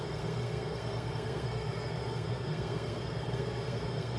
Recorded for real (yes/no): no